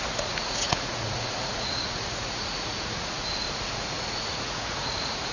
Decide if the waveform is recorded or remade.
remade